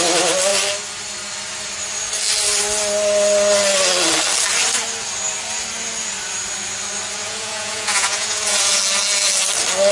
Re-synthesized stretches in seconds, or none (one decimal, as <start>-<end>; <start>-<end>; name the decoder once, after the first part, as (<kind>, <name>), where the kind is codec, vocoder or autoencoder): 7.2-8.8 (vocoder, Vocos)

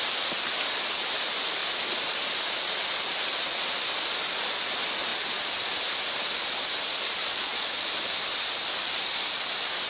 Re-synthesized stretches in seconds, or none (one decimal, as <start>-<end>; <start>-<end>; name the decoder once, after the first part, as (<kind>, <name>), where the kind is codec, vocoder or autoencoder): 7.2-7.8 (vocoder, Vocos)